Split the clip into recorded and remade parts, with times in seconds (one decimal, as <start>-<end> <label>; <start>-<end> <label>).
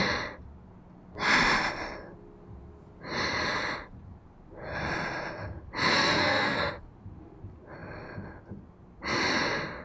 0.0-5.9 recorded; 5.9-6.7 remade; 6.7-9.8 recorded